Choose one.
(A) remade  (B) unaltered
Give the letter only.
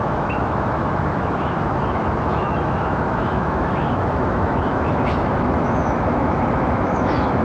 A